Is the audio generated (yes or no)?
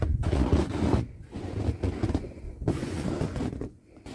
yes